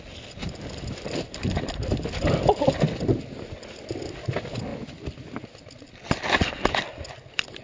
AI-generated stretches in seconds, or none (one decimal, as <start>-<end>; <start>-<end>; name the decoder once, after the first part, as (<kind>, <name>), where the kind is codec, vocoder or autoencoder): 4.7-5.5 (vocoder, BigVGAN v2)